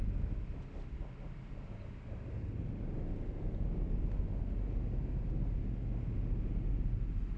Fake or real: real